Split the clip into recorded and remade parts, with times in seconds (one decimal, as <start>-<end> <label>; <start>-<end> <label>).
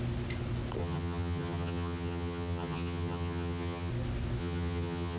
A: 0.0-0.8 recorded; 0.8-3.9 remade; 3.9-4.4 recorded; 4.4-5.2 remade